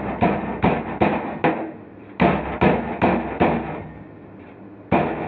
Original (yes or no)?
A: yes